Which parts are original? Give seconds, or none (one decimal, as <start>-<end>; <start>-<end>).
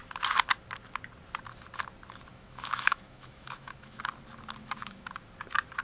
0.0-2.3; 4.0-4.6; 5.1-5.8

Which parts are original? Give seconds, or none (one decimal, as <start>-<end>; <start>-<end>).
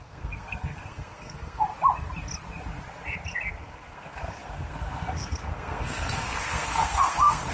1.7-3.5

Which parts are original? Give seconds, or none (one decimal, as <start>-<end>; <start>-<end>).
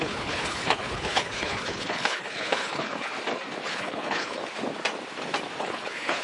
3.1-3.7; 4.4-5.6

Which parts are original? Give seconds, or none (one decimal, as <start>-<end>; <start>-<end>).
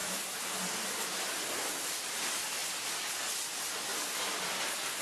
0.0-5.0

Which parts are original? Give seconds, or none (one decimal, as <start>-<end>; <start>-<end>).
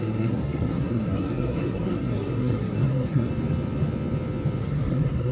3.3-4.6